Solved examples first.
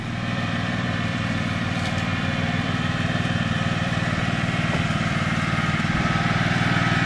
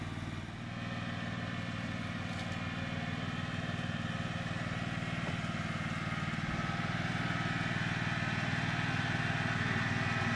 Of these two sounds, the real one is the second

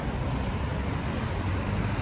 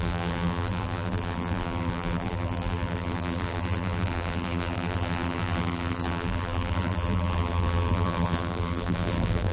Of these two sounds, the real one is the first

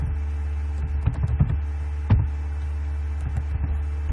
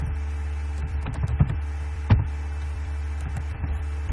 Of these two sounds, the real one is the first